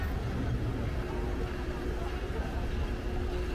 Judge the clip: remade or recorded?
recorded